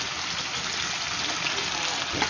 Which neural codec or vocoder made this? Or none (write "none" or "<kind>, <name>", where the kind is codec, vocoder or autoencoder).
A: none